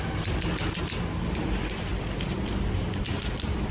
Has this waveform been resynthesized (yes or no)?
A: no